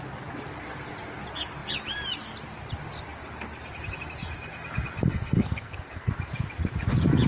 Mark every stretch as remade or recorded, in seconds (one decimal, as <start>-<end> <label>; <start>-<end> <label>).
0.0-5.1 recorded; 5.1-6.1 remade; 6.1-7.3 recorded